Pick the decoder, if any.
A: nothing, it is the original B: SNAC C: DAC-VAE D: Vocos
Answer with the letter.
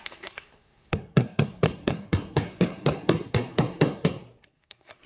B